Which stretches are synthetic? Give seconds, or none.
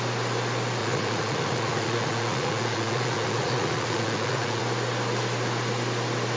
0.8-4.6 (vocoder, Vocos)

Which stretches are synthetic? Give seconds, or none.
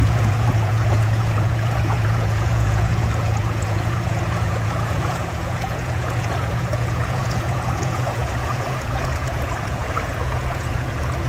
0.0-11.3 (vocoder, Vocos)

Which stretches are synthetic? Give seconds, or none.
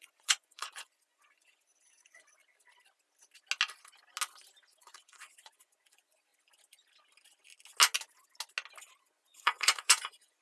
0.0-2.4 (vocoder, Vocos); 4.8-6.3; 9.0-10.4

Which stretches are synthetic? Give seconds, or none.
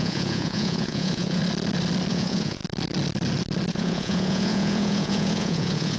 0.0-1.4 (vocoder, Vocos); 2.1-2.6; 3.7-6.0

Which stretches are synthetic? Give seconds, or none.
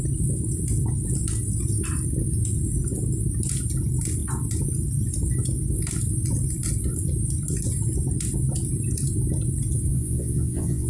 9.9-10.9 (vocoder, Vocos)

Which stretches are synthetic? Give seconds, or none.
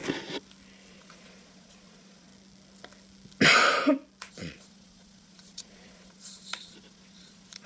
0.9-2.3 (vocoder, Vocos); 4.3-7.7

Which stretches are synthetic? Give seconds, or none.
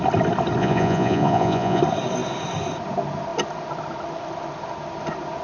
0.6-1.8 (vocoder, Vocos)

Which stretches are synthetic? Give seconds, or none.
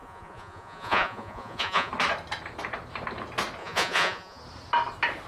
0.0-1.9 (vocoder, Vocos); 3.6-4.4